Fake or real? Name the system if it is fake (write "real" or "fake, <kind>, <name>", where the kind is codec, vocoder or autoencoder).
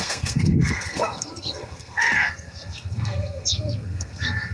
fake, codec, SNAC